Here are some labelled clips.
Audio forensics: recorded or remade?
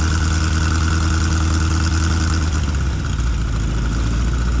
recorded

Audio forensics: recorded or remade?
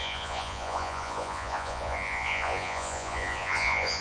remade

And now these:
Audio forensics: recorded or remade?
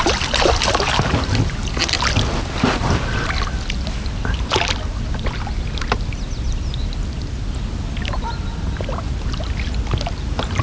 recorded